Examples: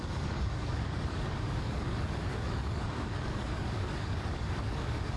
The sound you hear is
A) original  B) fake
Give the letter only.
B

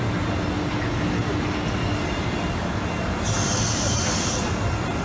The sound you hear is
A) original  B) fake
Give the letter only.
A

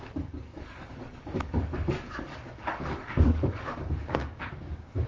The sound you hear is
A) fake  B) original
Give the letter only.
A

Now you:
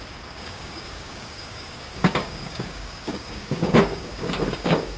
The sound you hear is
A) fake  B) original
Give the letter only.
A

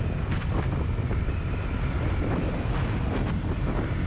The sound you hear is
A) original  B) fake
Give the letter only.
A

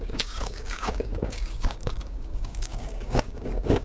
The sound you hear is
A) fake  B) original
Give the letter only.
A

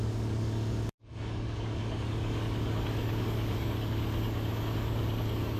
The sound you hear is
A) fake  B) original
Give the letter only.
A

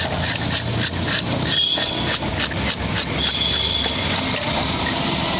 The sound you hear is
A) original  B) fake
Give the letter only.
A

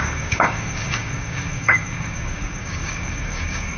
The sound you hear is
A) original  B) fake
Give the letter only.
B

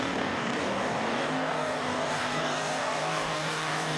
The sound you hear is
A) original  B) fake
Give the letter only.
B